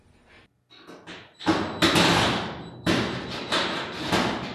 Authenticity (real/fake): real